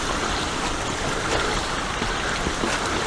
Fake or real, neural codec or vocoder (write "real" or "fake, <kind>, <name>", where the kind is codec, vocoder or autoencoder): real